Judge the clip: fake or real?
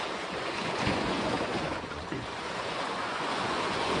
fake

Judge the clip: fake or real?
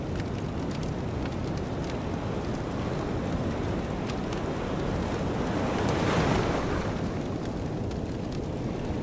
real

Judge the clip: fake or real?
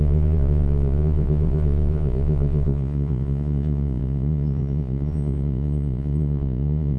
fake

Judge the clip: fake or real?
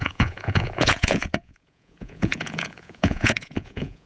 fake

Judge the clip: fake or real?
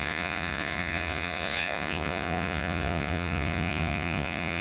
fake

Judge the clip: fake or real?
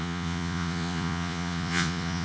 fake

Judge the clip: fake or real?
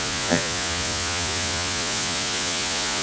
fake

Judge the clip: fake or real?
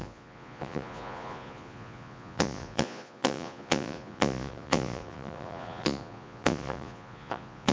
fake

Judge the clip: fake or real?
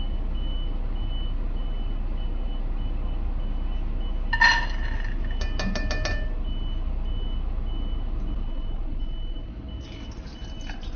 real